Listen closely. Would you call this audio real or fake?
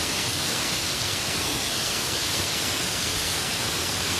fake